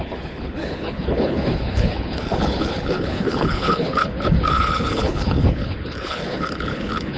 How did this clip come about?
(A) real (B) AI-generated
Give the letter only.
B